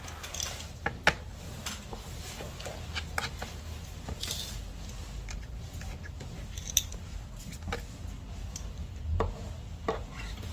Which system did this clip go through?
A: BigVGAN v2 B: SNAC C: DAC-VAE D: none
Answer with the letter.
D